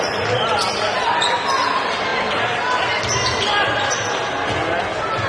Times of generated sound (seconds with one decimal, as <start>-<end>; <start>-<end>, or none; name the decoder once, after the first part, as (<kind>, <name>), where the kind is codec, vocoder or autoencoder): none